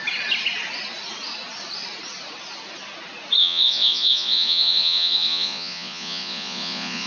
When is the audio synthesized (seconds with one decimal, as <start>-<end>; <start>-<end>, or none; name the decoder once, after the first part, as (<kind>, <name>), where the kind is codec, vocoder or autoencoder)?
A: 3.4-7.1 (vocoder, Vocos)